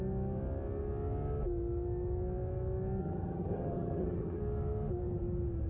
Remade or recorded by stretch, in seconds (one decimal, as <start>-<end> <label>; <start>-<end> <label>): 0.0-3.0 recorded; 3.0-4.4 remade; 4.4-5.7 recorded